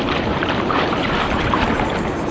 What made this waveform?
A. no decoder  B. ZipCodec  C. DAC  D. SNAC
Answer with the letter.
A